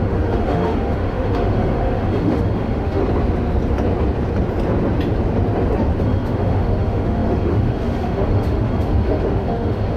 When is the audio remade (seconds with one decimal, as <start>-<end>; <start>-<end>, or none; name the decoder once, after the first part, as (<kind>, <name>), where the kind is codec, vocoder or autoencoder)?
0.0-3.0 (autoencoder, DAC-VAE); 6.0-10.0